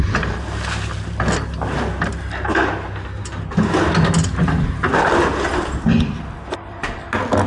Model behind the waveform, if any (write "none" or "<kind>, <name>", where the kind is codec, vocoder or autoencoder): none